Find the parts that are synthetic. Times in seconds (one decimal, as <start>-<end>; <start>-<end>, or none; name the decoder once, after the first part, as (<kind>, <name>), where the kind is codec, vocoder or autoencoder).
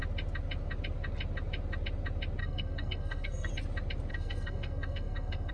2.4-3.5 (codec, SNAC); 4.1-5.5